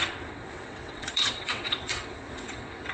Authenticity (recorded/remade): remade